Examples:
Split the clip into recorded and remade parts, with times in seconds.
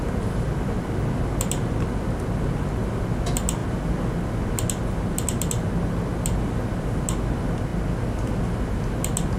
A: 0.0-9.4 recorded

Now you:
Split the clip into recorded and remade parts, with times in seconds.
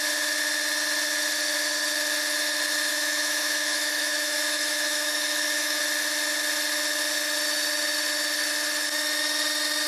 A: 0.0-2.9 recorded; 2.9-5.8 remade; 5.8-9.9 recorded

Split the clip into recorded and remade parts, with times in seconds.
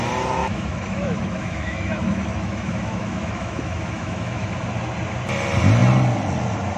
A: 0.0-0.4 recorded; 0.4-4.5 remade; 4.5-6.8 recorded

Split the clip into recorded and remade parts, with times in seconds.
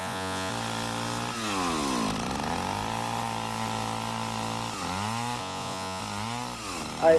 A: 0.0-0.5 remade; 0.5-5.4 recorded; 5.4-6.0 remade; 6.0-7.2 recorded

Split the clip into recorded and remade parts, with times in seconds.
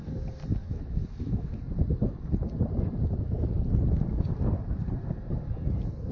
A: 0.0-0.6 recorded; 0.6-1.6 remade; 1.6-6.1 recorded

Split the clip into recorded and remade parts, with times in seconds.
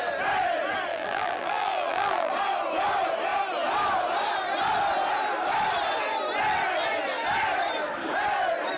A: 0.0-0.9 recorded; 0.9-2.3 remade; 2.3-8.8 recorded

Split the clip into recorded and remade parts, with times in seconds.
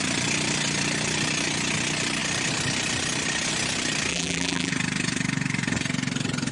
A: 0.0-4.1 recorded; 4.1-4.7 remade; 4.7-6.5 recorded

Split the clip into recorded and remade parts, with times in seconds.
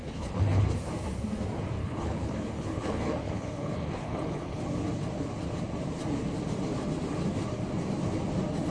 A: 0.0-0.6 remade; 0.6-1.8 recorded; 1.8-4.6 remade; 4.6-8.7 recorded